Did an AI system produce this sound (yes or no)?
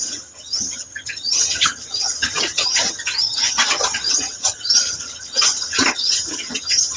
yes